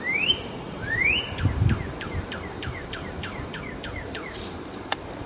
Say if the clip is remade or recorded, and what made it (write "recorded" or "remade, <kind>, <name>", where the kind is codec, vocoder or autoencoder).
remade, vocoder, BigVGAN v2